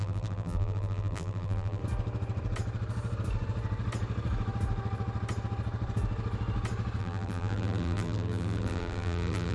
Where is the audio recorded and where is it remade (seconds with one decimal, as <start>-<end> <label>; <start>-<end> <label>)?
0.0-1.8 remade; 1.8-7.0 recorded; 7.0-9.5 remade